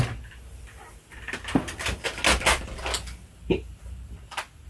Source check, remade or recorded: recorded